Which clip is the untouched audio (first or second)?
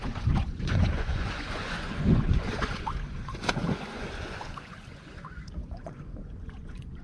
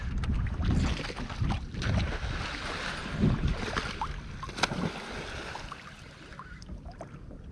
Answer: second